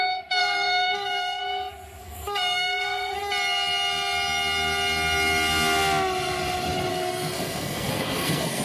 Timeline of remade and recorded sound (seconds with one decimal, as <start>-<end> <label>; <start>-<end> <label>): 0.0-0.4 recorded; 0.4-1.4 remade; 1.4-2.0 recorded; 2.0-3.2 remade; 3.2-6.9 recorded; 6.9-8.6 remade